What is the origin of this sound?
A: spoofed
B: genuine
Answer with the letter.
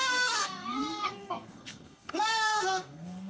A